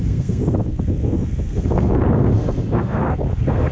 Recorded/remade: remade